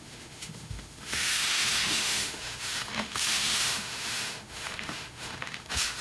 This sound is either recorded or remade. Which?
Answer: remade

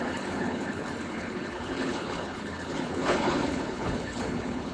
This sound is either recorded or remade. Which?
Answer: remade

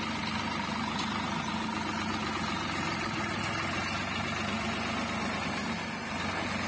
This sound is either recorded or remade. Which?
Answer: recorded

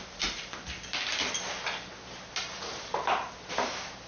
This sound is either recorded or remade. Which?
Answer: recorded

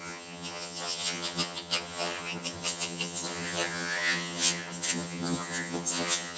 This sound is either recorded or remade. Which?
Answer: remade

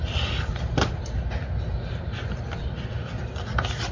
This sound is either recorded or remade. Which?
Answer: recorded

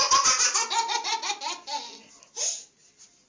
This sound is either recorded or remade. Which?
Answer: recorded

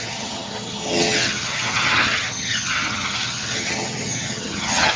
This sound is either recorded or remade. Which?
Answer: remade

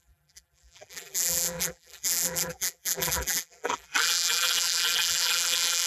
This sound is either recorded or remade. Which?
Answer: remade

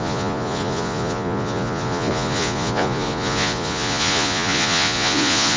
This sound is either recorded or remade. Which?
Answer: remade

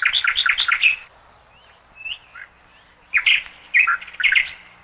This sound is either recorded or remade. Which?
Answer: recorded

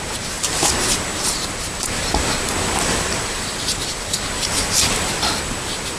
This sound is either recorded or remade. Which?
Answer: remade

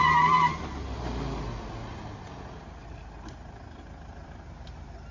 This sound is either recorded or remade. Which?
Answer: recorded